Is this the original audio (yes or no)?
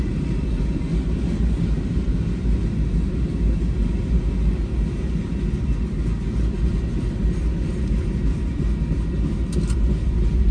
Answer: yes